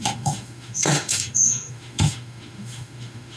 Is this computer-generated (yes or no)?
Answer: yes